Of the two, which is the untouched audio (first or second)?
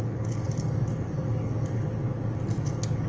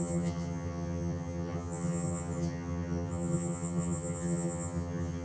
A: first